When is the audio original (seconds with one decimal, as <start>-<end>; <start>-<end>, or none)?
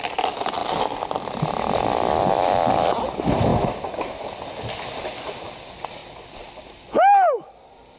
0.6-2.2; 3.5-5.2; 6.0-8.0